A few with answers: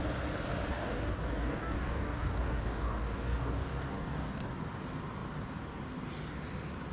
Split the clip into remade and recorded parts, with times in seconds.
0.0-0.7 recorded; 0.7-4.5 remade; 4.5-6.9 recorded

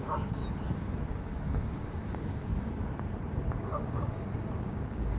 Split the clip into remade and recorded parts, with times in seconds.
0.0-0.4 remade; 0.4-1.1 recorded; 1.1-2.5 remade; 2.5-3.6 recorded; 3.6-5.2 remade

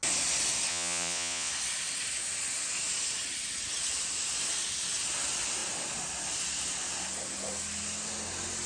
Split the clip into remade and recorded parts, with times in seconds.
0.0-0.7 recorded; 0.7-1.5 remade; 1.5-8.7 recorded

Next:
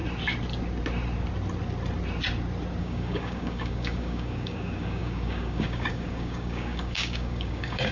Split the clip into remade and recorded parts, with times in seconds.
0.0-2.8 recorded; 2.8-7.9 remade

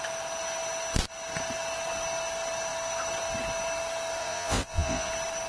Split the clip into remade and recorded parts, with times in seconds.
0.0-4.2 recorded; 4.2-5.1 remade; 5.1-5.5 recorded